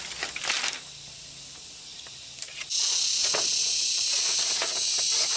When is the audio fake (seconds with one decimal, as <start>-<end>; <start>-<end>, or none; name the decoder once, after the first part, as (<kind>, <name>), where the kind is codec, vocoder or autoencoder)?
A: 3.6-5.4 (vocoder, Vocos)